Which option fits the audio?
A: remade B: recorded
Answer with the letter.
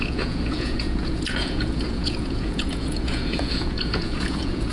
A